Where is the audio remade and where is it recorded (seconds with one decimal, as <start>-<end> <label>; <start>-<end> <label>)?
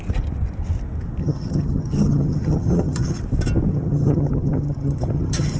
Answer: 0.0-1.2 recorded; 1.2-3.2 remade; 3.2-3.7 recorded; 3.7-5.6 remade